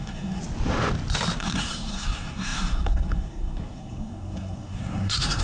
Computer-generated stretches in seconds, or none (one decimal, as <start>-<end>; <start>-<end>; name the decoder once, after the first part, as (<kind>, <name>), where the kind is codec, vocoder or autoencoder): 0.0-0.4 (codec, SNAC); 1.4-5.4